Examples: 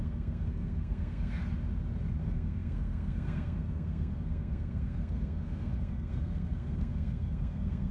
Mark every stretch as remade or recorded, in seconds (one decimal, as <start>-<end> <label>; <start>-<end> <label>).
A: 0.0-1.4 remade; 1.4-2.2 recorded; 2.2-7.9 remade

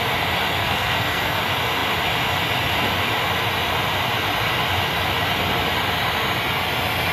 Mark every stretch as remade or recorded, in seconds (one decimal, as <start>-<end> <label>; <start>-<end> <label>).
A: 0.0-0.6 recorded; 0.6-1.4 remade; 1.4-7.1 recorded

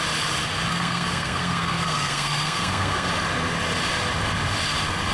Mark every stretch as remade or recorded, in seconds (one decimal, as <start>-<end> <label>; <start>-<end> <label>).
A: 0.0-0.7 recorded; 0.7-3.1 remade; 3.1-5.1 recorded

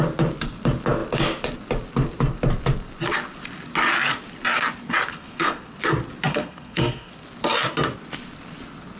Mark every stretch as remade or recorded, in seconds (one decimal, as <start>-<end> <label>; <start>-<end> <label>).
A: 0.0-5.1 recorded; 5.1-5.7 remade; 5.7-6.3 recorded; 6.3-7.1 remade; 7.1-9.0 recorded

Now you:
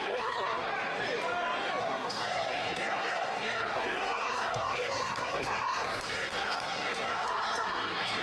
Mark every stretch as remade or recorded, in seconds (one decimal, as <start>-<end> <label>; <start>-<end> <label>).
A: 0.0-0.7 remade; 0.7-1.8 recorded; 1.8-8.2 remade

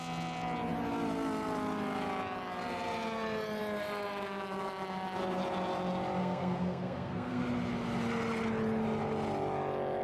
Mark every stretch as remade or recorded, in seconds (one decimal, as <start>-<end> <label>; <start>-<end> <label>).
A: 0.0-6.2 recorded; 6.2-7.4 remade; 7.4-10.0 recorded